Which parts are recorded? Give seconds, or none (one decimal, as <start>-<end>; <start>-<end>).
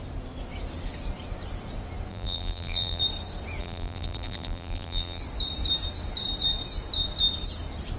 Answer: 0.0-2.1; 3.0-3.6; 5.2-8.0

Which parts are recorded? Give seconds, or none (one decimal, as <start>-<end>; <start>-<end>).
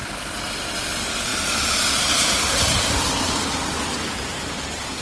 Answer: none